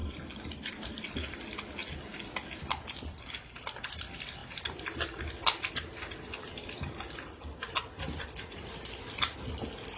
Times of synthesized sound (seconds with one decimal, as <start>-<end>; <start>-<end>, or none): none